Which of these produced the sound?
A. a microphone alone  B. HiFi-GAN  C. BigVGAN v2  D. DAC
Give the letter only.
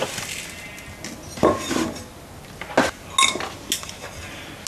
A